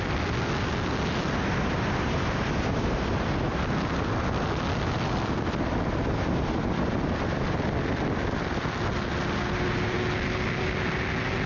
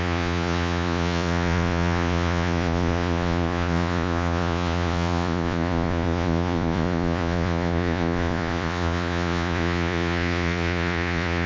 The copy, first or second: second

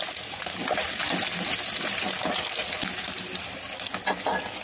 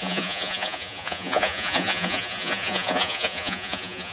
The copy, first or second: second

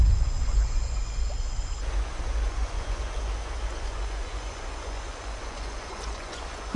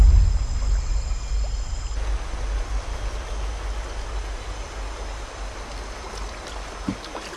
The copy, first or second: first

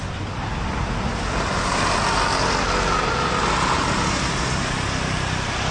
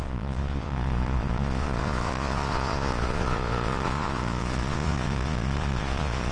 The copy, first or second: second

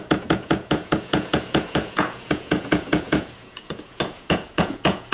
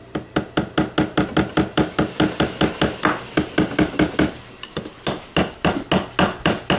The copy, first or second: first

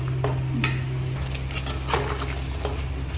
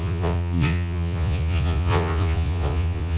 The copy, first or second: second